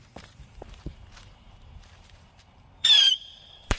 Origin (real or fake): fake